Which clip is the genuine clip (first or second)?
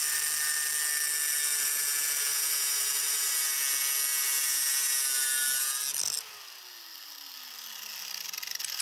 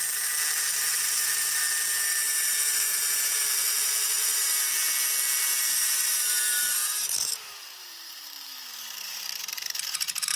first